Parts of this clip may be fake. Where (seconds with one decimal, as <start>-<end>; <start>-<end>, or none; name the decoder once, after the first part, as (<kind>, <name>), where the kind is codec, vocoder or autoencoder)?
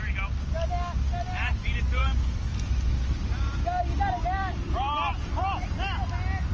none